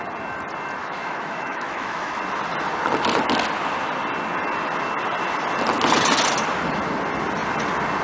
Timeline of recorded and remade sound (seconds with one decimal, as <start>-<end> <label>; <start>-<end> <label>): 0.0-0.8 recorded; 0.8-2.2 remade; 2.2-8.0 recorded